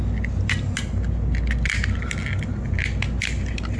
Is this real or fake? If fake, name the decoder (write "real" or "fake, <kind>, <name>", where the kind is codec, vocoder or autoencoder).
real